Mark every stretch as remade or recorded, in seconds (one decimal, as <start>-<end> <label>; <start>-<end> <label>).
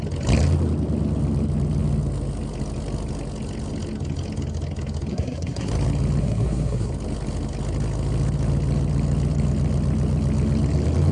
0.0-5.1 recorded; 5.1-5.7 remade; 5.7-6.2 recorded; 6.2-6.9 remade; 6.9-11.1 recorded